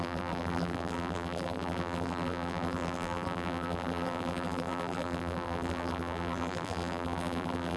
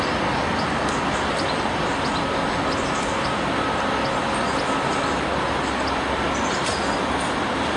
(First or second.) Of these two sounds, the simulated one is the first